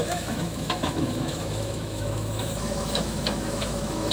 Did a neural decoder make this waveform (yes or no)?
yes